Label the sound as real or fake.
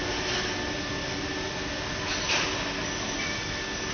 real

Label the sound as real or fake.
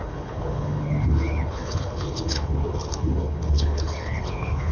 fake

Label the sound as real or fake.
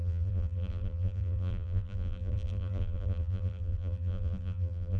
fake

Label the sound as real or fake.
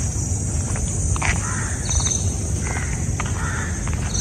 real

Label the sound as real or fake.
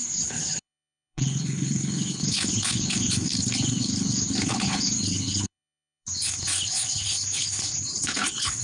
fake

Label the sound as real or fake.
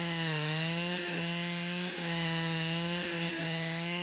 fake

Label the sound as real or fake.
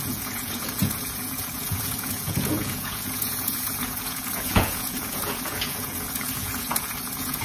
fake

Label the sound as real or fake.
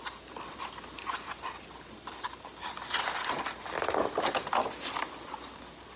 real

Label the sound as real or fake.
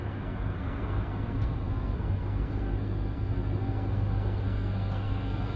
fake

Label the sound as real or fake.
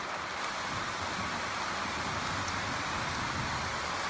real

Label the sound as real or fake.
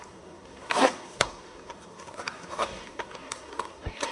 fake